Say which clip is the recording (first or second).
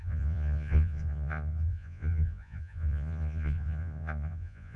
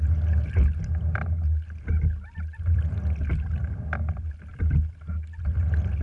second